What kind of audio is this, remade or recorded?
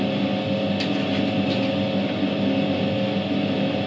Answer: recorded